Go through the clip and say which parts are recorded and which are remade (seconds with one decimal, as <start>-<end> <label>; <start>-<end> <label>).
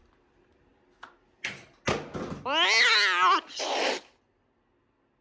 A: 0.0-5.2 recorded